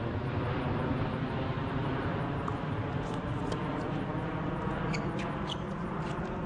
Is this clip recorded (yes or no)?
no